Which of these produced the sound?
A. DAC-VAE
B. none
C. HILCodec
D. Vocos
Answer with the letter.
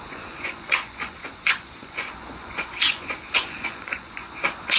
D